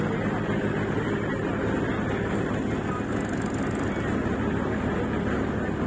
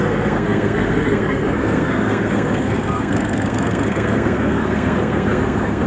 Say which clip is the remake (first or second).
second